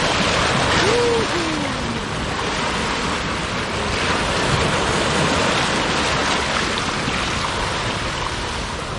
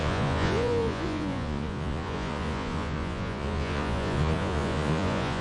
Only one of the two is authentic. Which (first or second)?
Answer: first